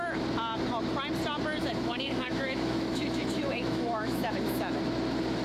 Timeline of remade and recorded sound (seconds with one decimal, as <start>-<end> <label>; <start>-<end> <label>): 0.0-1.6 recorded; 1.6-4.8 remade; 4.8-5.4 recorded